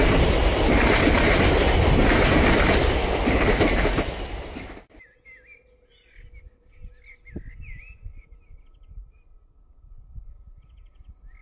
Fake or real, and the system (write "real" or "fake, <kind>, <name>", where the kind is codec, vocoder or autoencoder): real